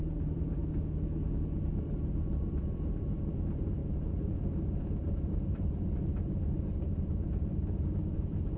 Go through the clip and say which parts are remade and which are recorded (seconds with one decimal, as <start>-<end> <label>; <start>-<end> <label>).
0.0-0.6 remade; 0.6-1.7 recorded; 1.7-8.6 remade